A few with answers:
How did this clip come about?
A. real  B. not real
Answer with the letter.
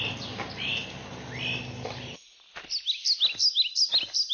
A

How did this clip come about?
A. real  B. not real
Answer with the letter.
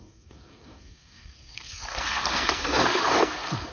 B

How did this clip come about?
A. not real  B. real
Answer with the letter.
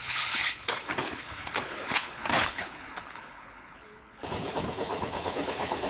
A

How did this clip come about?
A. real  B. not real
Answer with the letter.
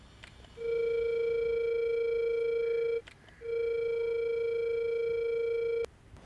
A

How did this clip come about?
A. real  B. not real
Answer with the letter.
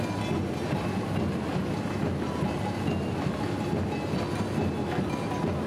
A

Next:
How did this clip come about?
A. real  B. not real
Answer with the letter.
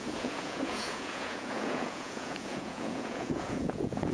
B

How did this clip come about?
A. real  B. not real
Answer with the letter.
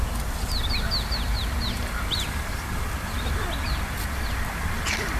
B